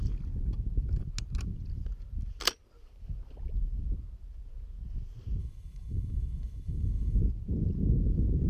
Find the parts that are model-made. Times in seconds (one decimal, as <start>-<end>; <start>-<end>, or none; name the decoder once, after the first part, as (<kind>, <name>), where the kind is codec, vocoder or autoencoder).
5.4-7.2 (autoencoder, DAC-VAE)